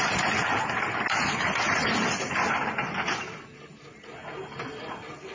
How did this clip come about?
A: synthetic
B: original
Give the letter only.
B